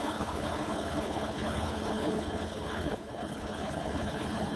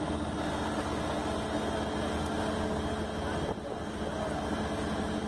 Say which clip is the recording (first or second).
second